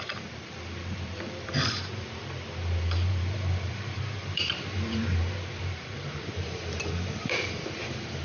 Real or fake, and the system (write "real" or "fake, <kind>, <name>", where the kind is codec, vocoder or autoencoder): fake, vocoder, BigVGAN v2